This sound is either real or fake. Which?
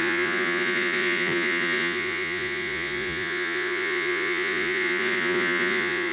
fake